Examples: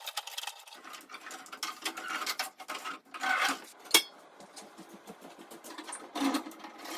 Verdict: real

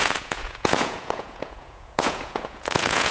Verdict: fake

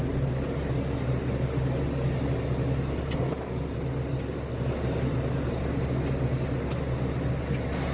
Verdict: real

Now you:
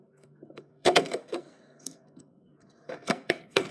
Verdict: fake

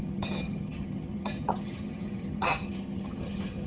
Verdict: fake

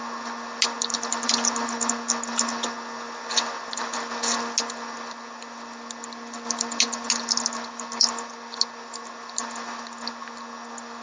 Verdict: real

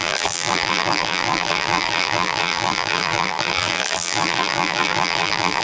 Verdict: fake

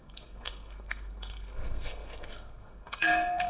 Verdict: fake